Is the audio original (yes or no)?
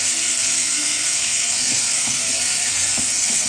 no